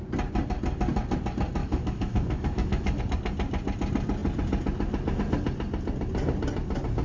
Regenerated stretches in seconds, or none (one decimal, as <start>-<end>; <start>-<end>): 1.6-3.0